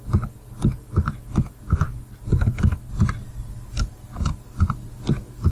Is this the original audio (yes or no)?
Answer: yes